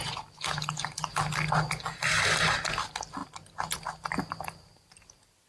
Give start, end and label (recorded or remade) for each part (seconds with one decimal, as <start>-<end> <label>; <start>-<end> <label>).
0.0-5.5 recorded